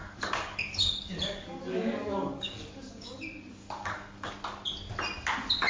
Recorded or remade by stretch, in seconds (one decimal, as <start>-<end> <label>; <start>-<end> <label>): 0.0-3.2 remade; 3.2-3.6 recorded; 3.6-4.3 remade; 4.3-5.7 recorded